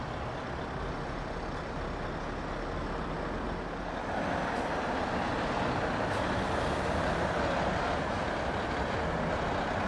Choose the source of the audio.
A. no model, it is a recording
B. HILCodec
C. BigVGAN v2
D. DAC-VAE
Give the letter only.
A